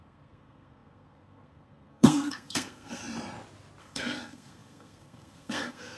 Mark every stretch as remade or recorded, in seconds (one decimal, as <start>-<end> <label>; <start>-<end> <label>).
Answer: 0.0-3.0 remade; 3.0-3.8 recorded; 3.8-6.0 remade